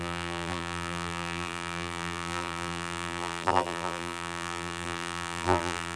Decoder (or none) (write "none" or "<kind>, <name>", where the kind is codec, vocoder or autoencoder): vocoder, BigVGAN v2